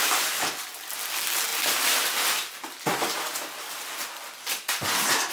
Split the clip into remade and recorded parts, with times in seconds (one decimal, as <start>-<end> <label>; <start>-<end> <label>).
0.0-5.3 recorded